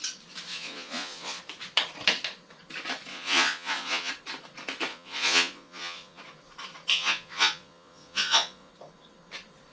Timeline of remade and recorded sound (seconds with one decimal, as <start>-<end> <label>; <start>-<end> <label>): 0.0-0.5 recorded; 0.5-1.4 remade; 1.4-3.1 recorded; 3.1-4.1 remade; 4.1-4.9 recorded; 4.9-6.2 remade; 6.2-6.9 recorded; 6.9-8.7 remade; 8.7-9.7 recorded